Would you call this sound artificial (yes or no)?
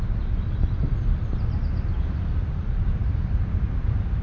no